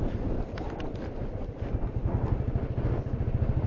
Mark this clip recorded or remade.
recorded